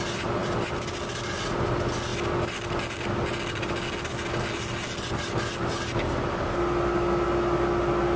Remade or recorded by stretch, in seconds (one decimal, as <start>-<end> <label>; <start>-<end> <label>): 0.0-8.2 recorded